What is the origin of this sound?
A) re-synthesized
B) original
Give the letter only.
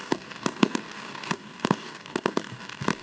A